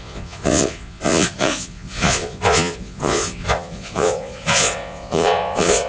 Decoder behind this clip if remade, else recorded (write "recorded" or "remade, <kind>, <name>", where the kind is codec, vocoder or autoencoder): remade, vocoder, Vocos